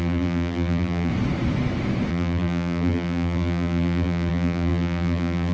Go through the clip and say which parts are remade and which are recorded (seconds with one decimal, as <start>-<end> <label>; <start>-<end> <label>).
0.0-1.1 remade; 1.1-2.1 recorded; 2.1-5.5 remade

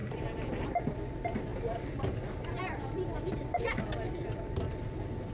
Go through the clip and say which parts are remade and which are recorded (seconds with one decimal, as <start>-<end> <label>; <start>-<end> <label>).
0.0-0.7 remade; 0.7-5.3 recorded

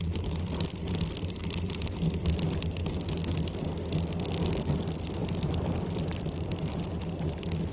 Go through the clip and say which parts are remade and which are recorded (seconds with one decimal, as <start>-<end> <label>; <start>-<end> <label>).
0.0-1.4 recorded; 1.4-2.9 remade; 2.9-5.2 recorded; 5.2-7.7 remade

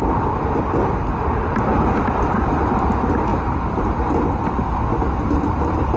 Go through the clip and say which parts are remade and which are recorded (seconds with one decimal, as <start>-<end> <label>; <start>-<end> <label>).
0.0-3.3 recorded; 3.3-4.1 remade; 4.1-4.9 recorded; 4.9-6.0 remade

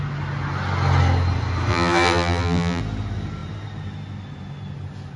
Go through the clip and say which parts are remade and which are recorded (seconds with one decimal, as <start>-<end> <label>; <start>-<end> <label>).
0.0-1.7 recorded; 1.7-2.8 remade; 2.8-5.2 recorded

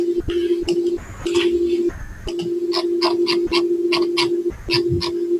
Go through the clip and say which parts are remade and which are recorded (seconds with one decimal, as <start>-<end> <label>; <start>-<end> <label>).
0.0-5.4 recorded

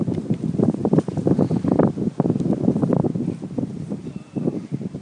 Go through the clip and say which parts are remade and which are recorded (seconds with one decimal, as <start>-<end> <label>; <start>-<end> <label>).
0.0-5.0 remade